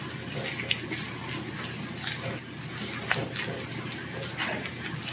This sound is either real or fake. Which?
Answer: real